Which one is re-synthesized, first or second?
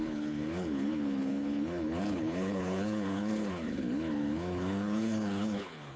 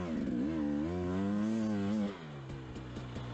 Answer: first